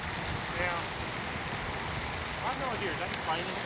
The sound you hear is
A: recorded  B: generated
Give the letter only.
A